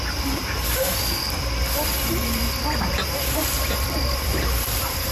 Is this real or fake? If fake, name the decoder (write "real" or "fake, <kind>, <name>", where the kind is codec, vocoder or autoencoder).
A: fake, vocoder, BigVGAN v2